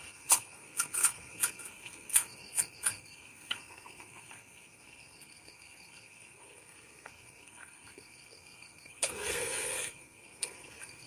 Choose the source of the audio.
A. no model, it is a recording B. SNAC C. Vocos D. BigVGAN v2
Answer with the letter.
B